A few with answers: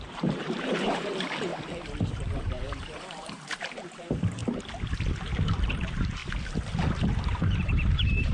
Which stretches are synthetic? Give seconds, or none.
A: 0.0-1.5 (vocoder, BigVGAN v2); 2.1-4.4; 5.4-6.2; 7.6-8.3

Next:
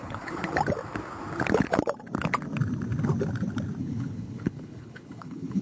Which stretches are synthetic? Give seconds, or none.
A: 0.0-0.4 (codec, HILCodec); 3.8-5.6